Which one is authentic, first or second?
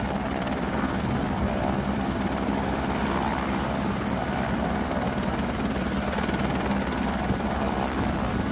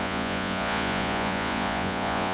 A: first